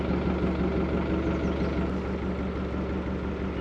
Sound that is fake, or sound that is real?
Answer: real